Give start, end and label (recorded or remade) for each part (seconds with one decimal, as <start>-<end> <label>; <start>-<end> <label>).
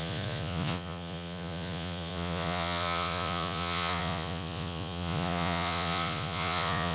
0.0-6.9 remade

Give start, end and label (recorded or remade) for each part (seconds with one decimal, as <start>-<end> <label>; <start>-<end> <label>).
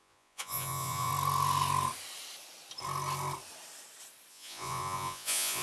0.0-1.1 remade; 1.1-4.3 recorded; 4.3-5.6 remade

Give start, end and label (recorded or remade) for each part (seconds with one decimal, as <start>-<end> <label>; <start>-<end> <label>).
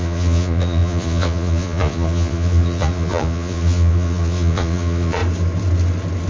0.0-5.2 remade; 5.2-6.3 recorded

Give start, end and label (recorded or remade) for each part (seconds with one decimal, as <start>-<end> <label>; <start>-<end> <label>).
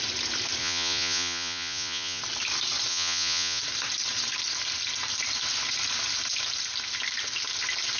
0.0-0.6 recorded; 0.6-2.2 remade; 2.2-2.9 recorded; 2.9-3.6 remade; 3.6-8.0 recorded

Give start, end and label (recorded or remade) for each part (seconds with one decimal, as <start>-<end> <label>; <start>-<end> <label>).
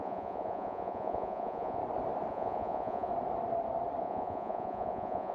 0.0-1.8 remade; 1.8-2.3 recorded; 2.3-3.1 remade; 3.1-4.0 recorded; 4.0-5.3 remade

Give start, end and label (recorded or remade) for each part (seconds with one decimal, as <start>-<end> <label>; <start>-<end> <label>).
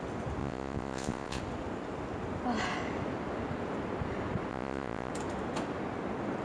0.0-0.4 recorded; 0.4-1.4 remade; 1.4-4.5 recorded; 4.5-5.1 remade; 5.1-6.4 recorded